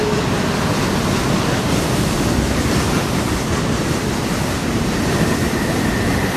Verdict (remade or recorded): recorded